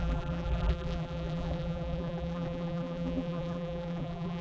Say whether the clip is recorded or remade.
remade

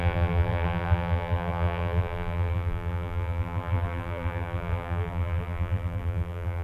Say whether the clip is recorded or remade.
remade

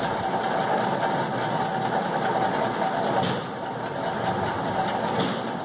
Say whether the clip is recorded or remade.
recorded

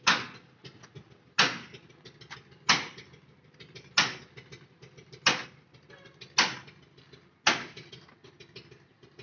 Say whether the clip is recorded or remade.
recorded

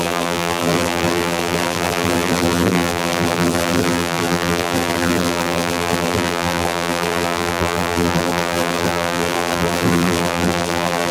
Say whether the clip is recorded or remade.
remade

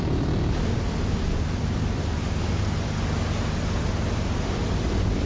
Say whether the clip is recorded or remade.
remade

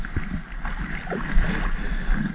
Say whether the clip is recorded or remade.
recorded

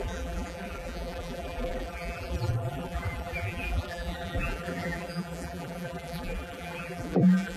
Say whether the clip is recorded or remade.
remade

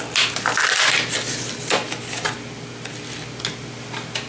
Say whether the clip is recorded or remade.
recorded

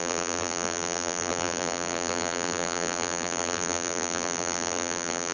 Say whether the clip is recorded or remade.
remade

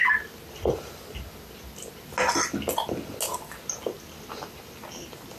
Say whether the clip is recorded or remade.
recorded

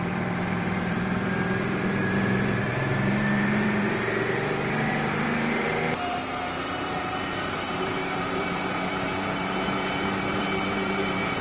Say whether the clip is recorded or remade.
remade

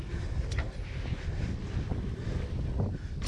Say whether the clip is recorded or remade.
recorded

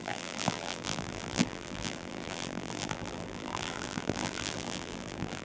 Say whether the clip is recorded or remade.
remade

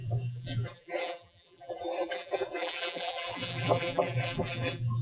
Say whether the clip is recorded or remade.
remade